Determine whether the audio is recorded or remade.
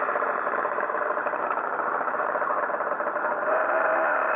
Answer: remade